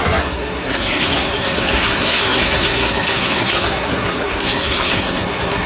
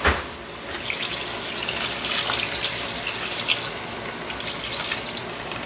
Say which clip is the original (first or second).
second